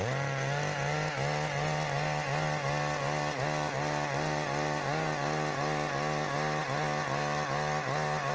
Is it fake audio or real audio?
real